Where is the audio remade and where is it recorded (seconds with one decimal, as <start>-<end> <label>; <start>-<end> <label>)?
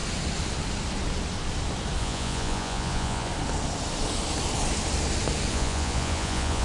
0.0-2.0 recorded; 2.0-3.3 remade; 3.3-5.5 recorded; 5.5-6.6 remade